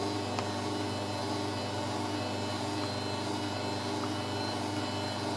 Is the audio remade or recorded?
recorded